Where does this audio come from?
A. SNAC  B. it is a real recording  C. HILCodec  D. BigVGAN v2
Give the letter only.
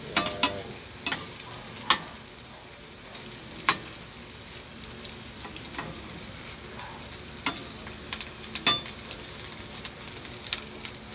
B